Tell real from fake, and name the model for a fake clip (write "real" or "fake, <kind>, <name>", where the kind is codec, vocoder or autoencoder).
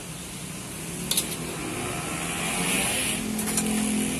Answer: real